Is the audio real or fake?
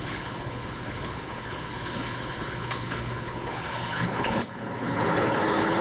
fake